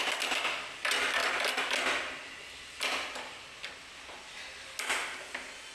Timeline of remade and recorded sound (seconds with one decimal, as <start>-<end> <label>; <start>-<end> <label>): 0.0-5.7 recorded